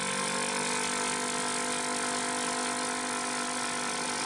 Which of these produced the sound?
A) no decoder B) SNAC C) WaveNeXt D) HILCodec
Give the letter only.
A